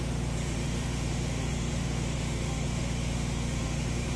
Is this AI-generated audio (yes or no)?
yes